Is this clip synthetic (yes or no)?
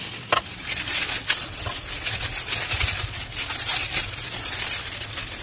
yes